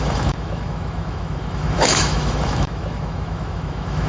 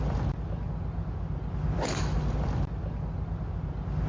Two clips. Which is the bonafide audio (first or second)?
second